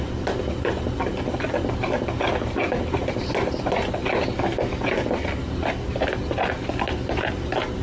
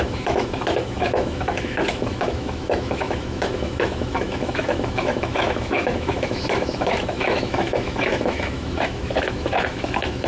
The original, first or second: first